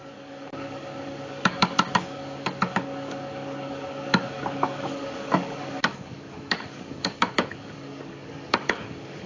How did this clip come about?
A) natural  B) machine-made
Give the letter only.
B